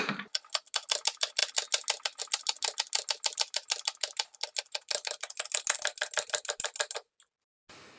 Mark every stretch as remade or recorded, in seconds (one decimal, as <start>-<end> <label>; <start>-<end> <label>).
0.0-8.0 recorded